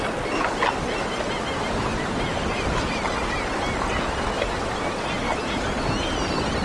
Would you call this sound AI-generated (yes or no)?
no